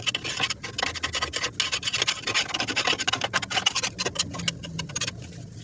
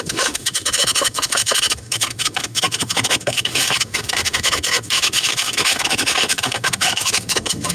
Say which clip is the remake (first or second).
second